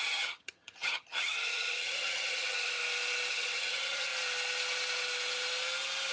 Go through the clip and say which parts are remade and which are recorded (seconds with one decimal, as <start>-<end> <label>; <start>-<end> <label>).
0.0-2.8 remade; 2.8-3.3 recorded; 3.3-4.1 remade; 4.1-6.1 recorded